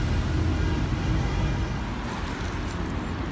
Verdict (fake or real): real